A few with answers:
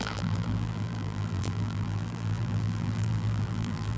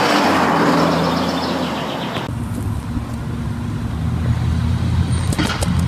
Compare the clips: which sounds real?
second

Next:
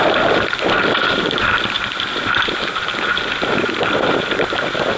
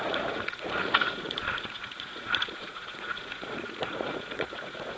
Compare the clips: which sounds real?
first